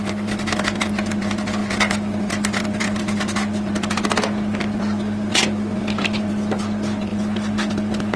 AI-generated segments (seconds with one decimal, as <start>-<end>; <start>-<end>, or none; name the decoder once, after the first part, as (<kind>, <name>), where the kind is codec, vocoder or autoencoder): none